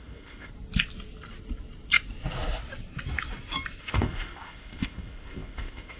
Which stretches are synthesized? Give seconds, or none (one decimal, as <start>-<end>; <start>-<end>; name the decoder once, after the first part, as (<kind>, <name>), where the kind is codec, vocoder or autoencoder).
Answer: 0.0-0.5 (codec, ZipCodec); 3.8-6.0